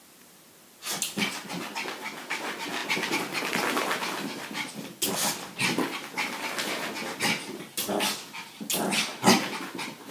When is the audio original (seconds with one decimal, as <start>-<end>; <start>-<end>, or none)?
0.0-10.1